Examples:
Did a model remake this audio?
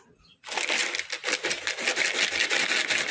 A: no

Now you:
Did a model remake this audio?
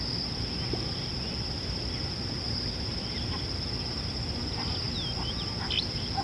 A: yes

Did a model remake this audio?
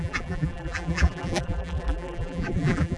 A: yes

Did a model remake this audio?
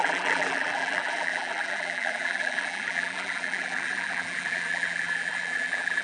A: yes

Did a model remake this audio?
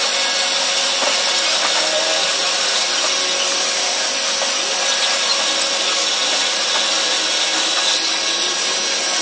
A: no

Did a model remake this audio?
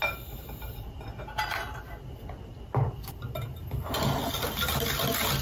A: no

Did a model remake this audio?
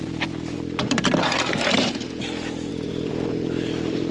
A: yes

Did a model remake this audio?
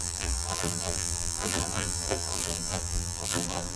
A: yes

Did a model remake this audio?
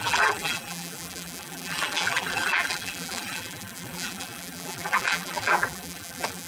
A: yes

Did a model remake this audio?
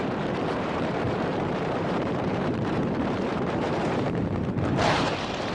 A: yes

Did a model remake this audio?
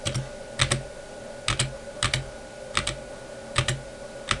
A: no